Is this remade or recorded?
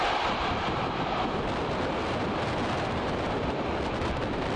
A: recorded